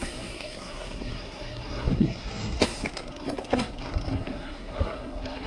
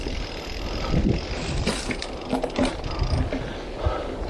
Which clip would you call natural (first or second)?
second